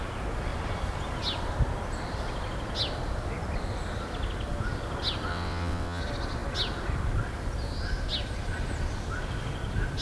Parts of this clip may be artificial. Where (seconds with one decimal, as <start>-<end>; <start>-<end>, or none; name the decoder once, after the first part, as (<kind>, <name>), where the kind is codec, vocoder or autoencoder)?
5.3-6.0 (vocoder, WaveNeXt)